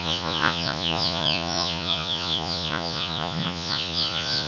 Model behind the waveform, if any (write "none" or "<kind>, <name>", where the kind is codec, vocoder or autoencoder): vocoder, Vocos